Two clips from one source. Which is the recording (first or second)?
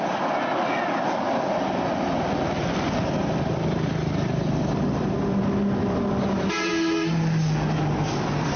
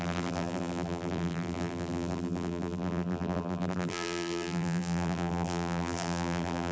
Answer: first